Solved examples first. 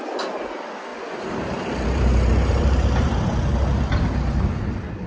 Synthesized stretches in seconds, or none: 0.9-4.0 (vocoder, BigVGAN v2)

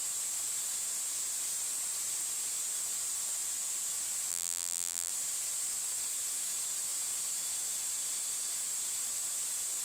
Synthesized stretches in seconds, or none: 4.3-5.1 (vocoder, BigVGAN v2)

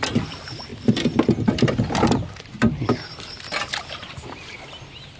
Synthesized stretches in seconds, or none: none

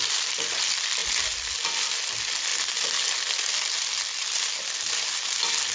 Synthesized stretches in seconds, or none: none

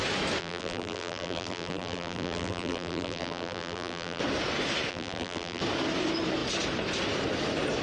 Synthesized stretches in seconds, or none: 0.4-4.2 (vocoder, BigVGAN v2); 4.9-5.6

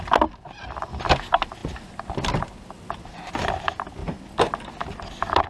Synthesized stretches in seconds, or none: none

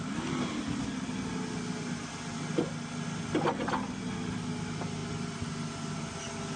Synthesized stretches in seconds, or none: none

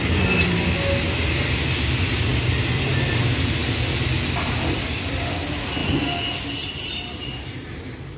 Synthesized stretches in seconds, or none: none